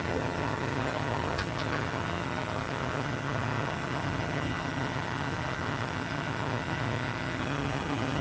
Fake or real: fake